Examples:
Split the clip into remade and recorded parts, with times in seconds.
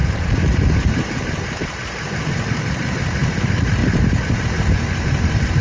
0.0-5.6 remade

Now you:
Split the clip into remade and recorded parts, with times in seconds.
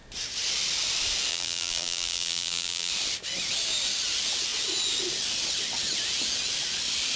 0.0-1.3 recorded; 1.3-2.9 remade; 2.9-7.2 recorded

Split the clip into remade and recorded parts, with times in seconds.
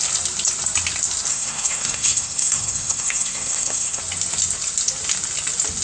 0.0-1.3 recorded; 1.3-4.0 remade; 4.0-5.8 recorded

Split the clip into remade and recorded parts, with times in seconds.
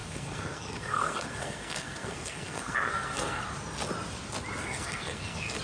0.0-3.4 remade; 3.4-4.6 recorded; 4.6-5.6 remade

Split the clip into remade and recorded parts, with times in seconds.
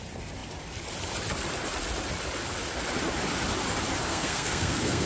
0.0-4.1 recorded; 4.1-5.1 remade